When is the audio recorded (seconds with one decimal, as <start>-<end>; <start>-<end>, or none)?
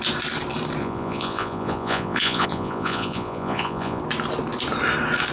0.0-0.8; 4.0-5.3